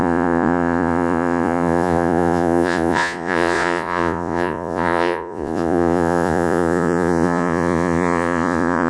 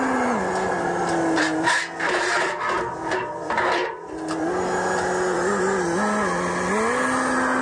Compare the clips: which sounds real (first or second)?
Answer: second